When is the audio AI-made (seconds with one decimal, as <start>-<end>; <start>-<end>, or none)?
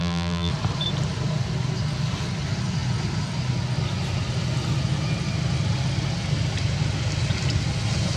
0.0-0.5